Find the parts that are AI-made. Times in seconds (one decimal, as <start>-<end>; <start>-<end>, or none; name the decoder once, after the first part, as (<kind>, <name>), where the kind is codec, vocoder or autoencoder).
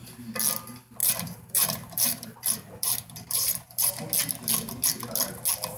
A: 1.0-3.9 (vocoder, BigVGAN v2)